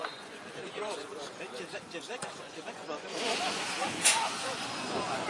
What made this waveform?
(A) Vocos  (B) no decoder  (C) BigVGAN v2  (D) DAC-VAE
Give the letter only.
A